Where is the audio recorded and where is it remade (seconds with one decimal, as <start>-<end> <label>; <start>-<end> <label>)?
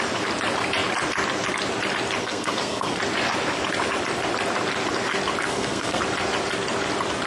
0.0-2.2 recorded; 2.2-3.0 remade; 3.0-5.5 recorded; 5.5-6.0 remade; 6.0-7.3 recorded